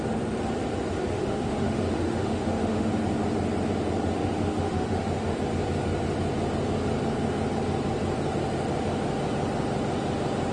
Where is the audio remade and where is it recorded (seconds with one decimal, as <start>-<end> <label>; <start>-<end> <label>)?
0.0-1.1 recorded; 1.1-2.9 remade; 2.9-4.2 recorded; 4.2-5.4 remade; 5.4-10.5 recorded